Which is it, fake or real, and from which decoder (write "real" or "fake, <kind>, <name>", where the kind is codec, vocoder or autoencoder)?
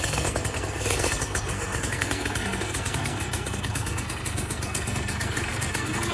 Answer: fake, codec, SNAC